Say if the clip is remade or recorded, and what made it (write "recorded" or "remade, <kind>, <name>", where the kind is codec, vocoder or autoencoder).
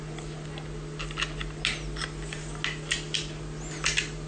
recorded